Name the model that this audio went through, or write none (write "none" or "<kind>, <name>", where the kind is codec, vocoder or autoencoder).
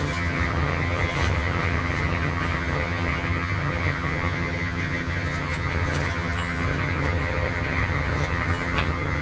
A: vocoder, HiFi-GAN